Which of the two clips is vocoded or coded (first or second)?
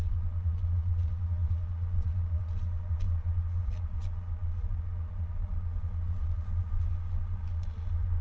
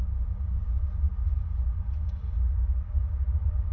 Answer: first